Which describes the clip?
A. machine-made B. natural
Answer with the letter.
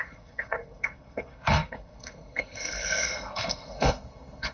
A